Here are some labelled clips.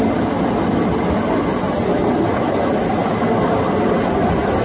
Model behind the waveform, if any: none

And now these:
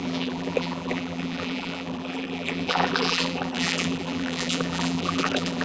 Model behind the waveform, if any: vocoder, BigVGAN v2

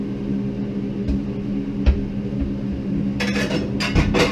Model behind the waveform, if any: none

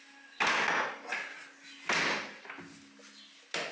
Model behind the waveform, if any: none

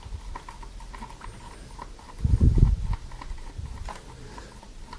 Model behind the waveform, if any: none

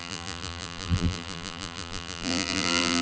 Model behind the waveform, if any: vocoder, BigVGAN v2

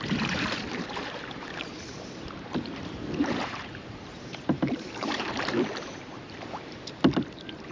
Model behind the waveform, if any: vocoder, BigVGAN v2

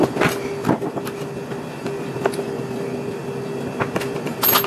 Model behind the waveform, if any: none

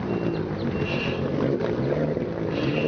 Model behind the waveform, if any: none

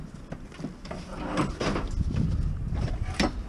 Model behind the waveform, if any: none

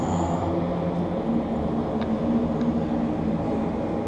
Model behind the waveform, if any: none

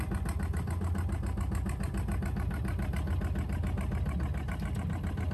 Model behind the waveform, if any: none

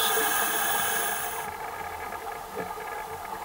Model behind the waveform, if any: none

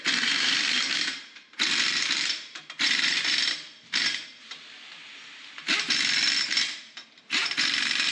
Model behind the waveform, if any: vocoder, BigVGAN v2